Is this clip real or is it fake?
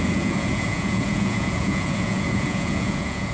fake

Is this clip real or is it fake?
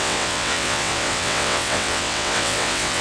fake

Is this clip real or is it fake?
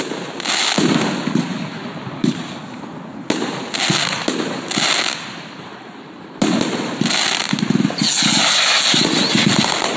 real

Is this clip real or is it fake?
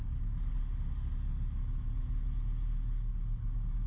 real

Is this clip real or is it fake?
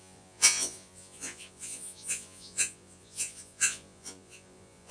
fake